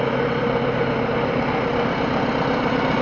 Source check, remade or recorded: recorded